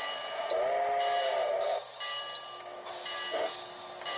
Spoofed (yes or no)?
no